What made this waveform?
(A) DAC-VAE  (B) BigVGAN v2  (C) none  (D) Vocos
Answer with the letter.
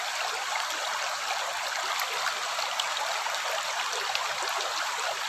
B